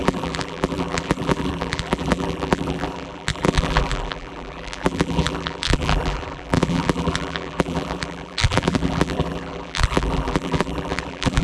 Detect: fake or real fake